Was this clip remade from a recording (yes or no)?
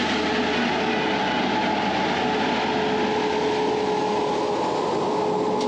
no